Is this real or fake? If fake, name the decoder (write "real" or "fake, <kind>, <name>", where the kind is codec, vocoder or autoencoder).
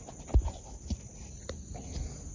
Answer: real